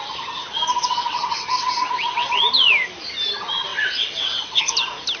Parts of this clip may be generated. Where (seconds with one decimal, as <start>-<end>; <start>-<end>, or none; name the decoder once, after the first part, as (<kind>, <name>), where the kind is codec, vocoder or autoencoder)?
0.7-2.4 (vocoder, WaveNeXt); 3.7-4.6